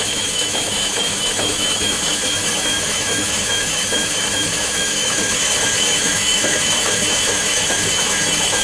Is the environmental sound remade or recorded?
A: remade